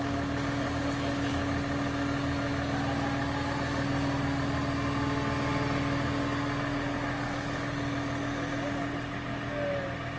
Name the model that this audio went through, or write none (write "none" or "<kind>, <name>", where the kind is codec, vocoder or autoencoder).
none